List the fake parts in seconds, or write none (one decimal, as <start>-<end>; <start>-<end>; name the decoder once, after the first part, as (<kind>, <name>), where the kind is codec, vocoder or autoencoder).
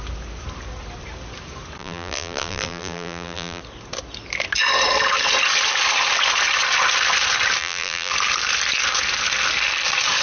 1.8-3.6 (vocoder, BigVGAN v2); 7.6-8.1